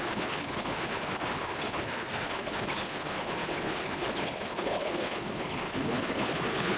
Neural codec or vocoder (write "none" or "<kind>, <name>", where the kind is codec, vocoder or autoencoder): codec, HILCodec